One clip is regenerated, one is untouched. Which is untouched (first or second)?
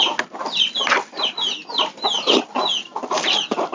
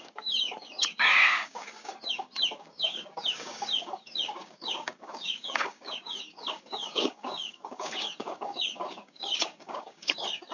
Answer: first